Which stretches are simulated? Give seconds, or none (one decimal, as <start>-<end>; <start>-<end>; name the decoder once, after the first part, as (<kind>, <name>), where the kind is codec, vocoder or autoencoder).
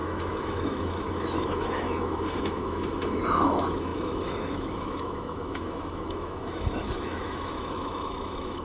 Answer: 0.0-8.6 (autoencoder, DAC-VAE)